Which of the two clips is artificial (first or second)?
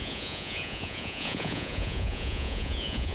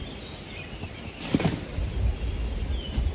first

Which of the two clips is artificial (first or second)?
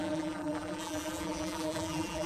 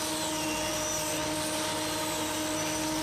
first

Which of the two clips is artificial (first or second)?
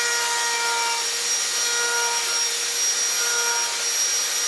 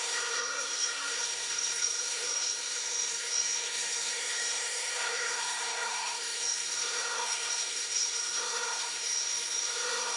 second